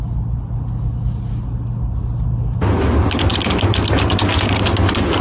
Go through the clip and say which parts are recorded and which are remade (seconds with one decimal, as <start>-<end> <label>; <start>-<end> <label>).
0.0-5.2 recorded